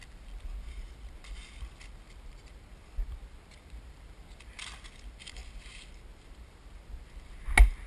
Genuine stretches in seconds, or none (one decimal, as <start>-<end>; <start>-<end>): 0.0-7.9